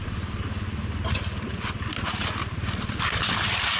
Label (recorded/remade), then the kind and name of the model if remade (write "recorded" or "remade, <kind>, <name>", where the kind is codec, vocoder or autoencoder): recorded